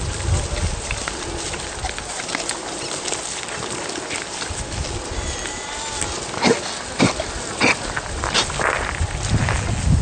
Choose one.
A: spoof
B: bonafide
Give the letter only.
B